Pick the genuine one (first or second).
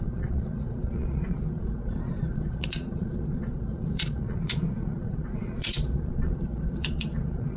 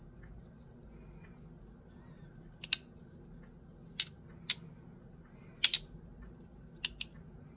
second